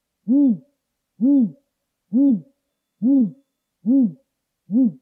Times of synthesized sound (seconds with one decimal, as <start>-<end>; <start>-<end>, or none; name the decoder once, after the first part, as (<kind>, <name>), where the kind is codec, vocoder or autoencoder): 2.7-3.7 (codec, SNAC)